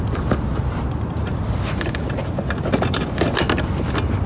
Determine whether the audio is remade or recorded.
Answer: recorded